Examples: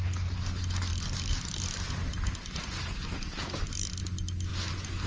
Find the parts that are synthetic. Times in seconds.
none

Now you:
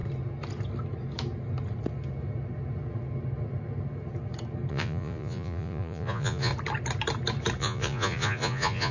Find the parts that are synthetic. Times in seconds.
4.7-6.5 (vocoder, Vocos); 7.6-8.9

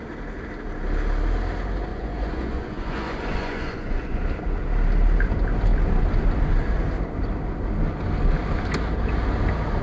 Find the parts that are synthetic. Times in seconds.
1.9-4.2 (vocoder, Vocos)

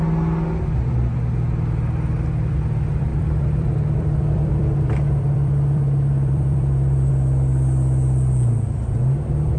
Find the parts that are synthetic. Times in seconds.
3.1-7.1 (vocoder, BigVGAN v2)

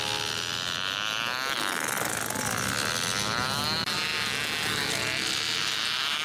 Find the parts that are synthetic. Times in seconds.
none

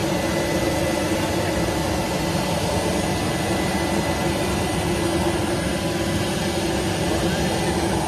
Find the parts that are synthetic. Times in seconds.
none

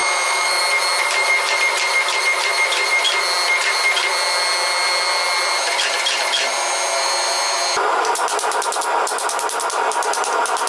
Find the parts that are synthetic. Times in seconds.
0.0-0.6 (autoencoder, DAC-VAE)